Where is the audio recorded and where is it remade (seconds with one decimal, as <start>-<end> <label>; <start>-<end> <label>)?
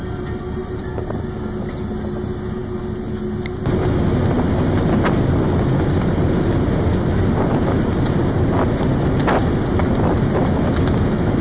0.0-11.4 recorded